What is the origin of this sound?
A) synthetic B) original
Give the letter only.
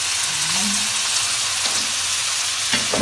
A